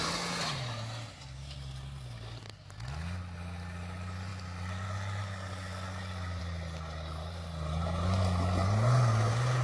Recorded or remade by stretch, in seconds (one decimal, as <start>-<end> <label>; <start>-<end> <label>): 0.0-9.6 recorded

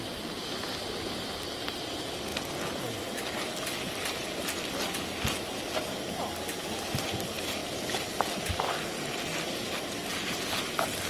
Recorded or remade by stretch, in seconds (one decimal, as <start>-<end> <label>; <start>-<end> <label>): 0.0-11.1 recorded